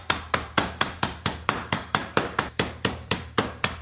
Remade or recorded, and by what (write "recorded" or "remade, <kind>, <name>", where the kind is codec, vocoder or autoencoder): remade, vocoder, BigVGAN v2